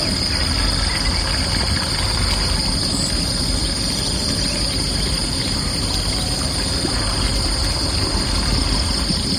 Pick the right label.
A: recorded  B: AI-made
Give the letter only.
A